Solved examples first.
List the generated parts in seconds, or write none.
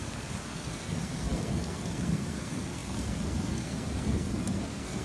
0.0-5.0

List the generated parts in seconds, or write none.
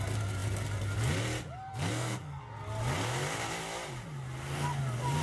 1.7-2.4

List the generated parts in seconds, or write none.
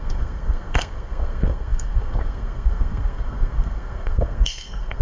0.0-5.0